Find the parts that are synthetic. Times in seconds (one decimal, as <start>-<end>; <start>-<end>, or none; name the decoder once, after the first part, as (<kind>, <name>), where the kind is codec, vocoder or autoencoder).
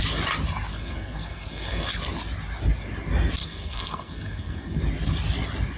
0.7-1.9 (codec, SNAC); 3.4-4.8